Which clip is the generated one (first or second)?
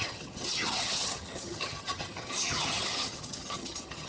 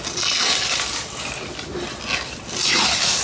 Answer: first